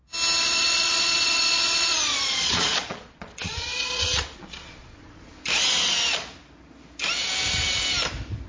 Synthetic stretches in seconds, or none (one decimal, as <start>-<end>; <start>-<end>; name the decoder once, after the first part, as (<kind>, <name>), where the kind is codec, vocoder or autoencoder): 0.4-5.4 (vocoder, Vocos)